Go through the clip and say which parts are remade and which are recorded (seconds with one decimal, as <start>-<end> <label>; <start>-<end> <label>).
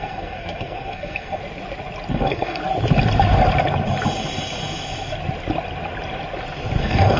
0.0-1.4 remade; 1.4-2.1 recorded; 2.1-2.6 remade; 2.6-6.8 recorded; 6.8-7.2 remade